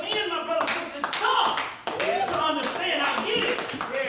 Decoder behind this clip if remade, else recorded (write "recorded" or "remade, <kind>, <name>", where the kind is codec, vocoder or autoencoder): recorded